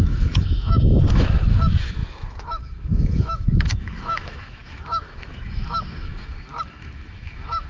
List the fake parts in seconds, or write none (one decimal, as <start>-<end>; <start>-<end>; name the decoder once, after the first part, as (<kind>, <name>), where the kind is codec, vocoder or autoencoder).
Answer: 0.0-7.7 (autoencoder, DAC-VAE)

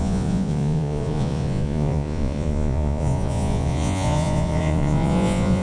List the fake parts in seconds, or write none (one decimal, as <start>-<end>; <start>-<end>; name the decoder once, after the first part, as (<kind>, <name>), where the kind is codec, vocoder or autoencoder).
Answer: 0.0-5.6 (vocoder, Vocos)

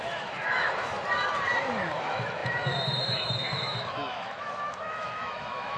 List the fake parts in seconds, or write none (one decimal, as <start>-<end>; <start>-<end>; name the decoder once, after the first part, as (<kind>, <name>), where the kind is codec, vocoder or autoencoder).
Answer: 0.0-0.9 (autoencoder, DAC-VAE); 1.6-5.8

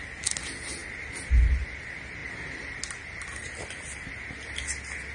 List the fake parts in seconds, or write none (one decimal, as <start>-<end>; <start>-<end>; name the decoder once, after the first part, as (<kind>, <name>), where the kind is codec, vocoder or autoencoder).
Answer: none

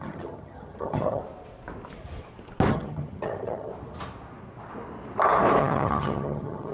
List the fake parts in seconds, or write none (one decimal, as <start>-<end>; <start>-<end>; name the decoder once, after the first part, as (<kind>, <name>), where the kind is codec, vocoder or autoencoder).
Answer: 0.0-1.2 (vocoder, HiFi-GAN); 2.7-3.7; 5.6-6.7

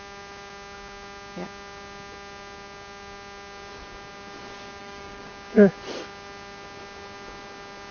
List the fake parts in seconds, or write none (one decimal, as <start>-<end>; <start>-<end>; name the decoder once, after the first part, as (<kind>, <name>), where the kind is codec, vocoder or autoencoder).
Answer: 4.8-5.3 (codec, DAC)